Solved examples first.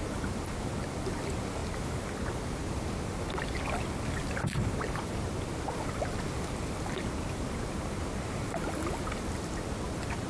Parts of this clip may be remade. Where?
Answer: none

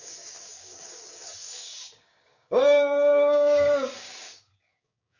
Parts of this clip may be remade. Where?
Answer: 0.0-5.2 (codec, DAC)